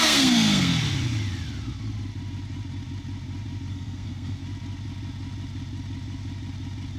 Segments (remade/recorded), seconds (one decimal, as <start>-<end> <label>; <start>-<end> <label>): 0.0-0.7 remade; 0.7-3.7 recorded; 3.7-4.4 remade; 4.4-7.0 recorded